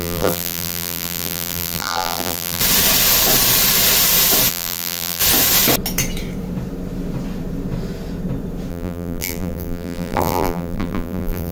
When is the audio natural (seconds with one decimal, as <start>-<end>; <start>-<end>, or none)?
2.6-4.5; 5.2-8.7